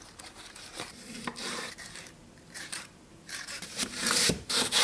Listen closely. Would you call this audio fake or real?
fake